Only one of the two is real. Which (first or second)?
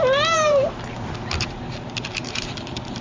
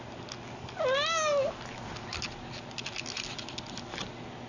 second